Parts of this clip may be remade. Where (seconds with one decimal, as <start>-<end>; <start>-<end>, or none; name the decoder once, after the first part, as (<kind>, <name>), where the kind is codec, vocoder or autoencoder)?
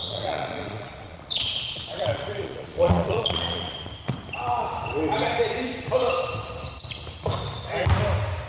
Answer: 0.0-3.9 (vocoder, Vocos)